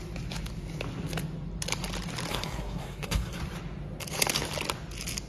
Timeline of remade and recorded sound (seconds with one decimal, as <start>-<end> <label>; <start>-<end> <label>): 0.0-2.3 recorded; 2.3-3.4 remade; 3.4-5.3 recorded